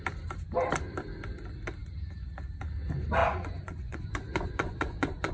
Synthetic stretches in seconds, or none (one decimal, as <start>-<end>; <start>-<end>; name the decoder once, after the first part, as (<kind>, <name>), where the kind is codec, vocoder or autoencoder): 3.2-5.3 (vocoder, Vocos)